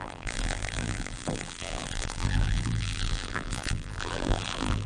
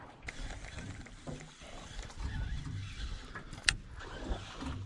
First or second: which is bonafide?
second